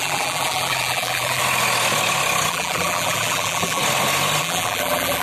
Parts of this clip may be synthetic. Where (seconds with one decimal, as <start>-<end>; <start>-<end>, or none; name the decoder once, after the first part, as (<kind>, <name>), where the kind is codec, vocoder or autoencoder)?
0.0-1.4 (vocoder, BigVGAN v2); 2.5-3.8; 4.4-5.2